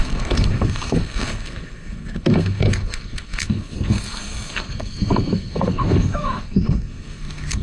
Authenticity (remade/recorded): remade